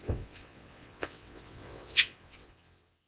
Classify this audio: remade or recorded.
remade